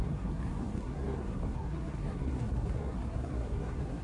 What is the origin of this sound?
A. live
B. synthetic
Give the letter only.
B